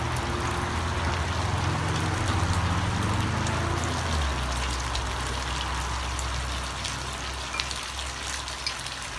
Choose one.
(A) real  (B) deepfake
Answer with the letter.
A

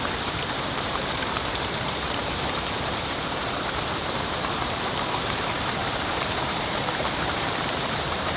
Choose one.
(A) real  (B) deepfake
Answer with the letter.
B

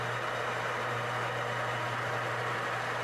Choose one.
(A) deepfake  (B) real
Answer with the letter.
B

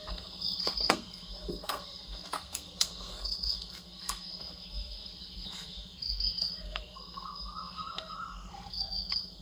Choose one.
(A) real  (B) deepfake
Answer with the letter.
B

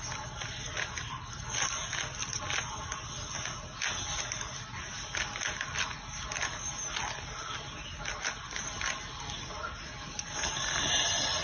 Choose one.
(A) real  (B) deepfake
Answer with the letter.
A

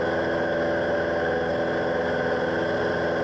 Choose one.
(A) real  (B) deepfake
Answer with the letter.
A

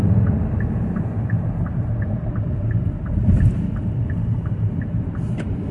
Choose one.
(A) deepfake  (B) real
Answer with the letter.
A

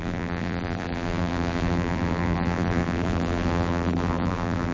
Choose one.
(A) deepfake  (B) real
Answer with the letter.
A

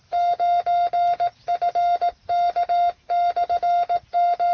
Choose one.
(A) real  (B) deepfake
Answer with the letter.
A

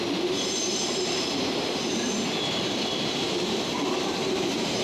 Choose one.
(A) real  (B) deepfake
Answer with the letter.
B